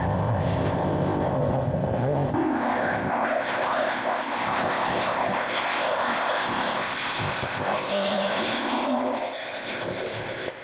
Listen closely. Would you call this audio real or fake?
fake